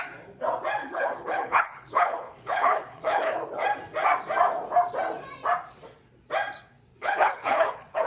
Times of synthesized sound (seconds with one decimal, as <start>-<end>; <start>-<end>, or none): 0.8-3.5; 6.9-8.1